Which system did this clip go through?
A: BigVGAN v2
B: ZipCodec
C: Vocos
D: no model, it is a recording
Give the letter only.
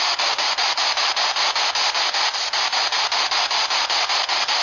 D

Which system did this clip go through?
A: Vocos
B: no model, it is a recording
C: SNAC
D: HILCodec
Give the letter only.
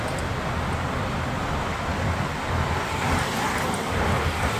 B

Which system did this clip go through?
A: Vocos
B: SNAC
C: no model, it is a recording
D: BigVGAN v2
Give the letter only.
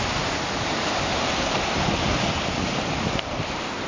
D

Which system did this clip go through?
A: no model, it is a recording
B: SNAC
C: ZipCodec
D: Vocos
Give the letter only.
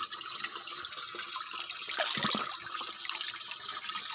A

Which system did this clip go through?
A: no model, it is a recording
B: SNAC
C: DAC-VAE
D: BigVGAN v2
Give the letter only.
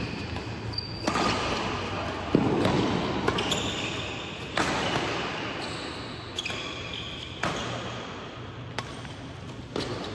A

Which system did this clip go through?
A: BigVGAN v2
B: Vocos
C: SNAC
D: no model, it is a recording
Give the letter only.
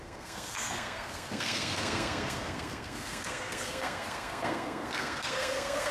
C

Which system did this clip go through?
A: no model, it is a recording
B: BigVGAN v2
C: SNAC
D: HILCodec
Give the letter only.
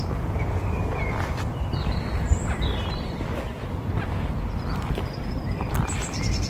B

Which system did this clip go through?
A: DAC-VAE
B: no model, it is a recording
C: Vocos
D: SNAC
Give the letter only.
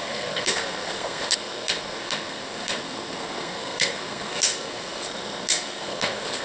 D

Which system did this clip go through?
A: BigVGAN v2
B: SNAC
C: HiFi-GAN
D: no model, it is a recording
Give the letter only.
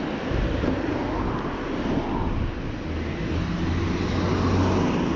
D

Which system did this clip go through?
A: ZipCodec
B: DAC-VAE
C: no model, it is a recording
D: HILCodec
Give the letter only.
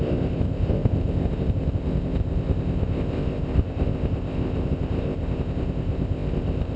A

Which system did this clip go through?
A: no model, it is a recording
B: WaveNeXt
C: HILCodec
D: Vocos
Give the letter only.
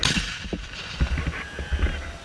A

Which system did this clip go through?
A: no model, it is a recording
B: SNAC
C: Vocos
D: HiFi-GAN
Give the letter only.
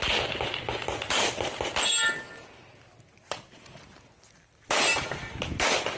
A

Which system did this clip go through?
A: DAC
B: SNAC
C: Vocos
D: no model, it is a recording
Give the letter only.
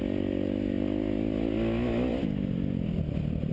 D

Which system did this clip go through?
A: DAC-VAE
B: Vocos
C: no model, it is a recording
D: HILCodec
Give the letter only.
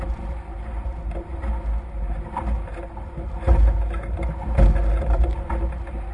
C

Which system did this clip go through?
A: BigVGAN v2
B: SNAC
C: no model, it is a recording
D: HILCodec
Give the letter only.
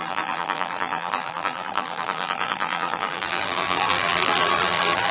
A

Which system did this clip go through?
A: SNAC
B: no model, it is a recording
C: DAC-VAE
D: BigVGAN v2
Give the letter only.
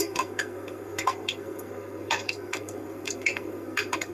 A